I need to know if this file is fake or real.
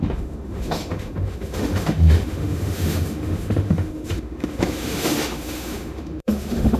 fake